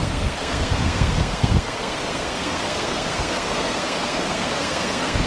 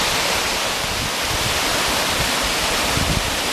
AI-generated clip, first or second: first